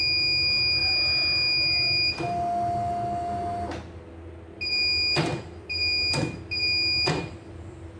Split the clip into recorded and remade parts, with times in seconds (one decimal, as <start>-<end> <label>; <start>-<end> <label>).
0.0-8.0 recorded